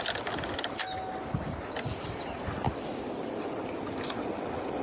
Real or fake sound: real